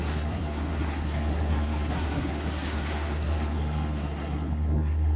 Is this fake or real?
fake